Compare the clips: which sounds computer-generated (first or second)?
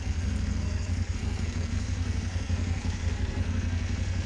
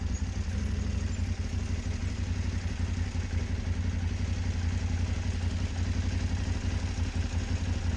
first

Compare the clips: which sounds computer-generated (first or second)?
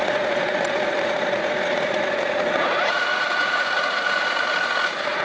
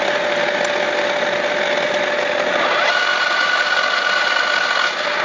first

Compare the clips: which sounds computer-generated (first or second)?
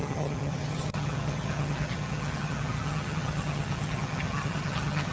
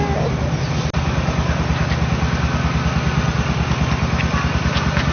first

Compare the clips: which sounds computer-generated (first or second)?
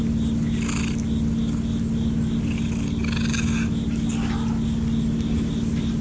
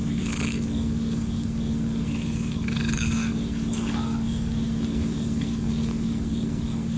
second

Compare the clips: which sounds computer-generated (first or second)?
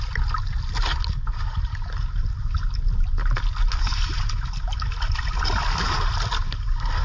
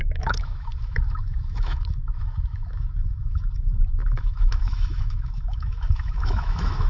second